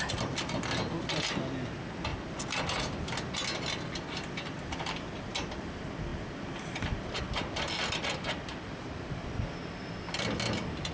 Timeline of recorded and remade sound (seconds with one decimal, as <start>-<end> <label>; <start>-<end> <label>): 0.0-10.9 recorded